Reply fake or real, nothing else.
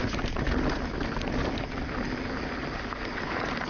real